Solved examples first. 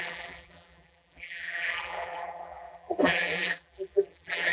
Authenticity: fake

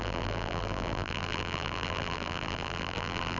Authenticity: fake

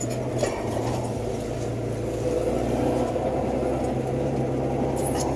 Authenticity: real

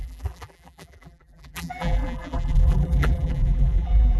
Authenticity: fake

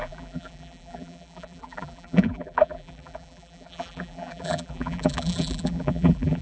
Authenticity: fake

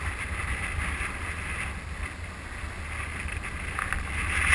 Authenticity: real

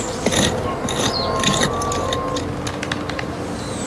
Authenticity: real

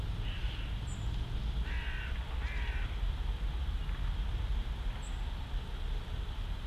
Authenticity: real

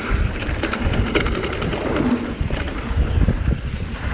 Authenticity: fake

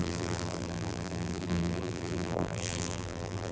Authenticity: fake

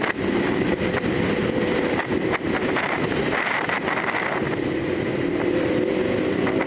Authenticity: real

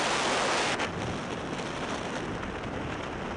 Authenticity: real